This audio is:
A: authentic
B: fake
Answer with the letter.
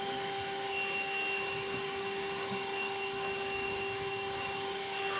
B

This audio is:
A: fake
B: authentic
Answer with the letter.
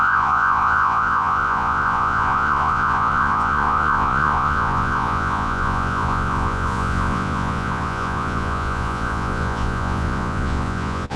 A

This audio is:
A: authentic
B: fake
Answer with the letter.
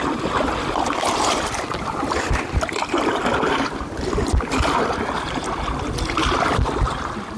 A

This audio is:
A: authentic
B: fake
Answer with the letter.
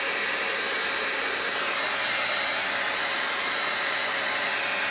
A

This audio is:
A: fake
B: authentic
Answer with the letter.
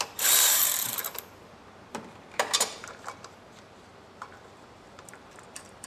A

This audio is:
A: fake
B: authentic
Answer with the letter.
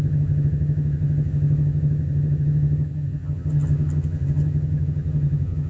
A